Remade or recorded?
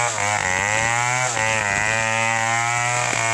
recorded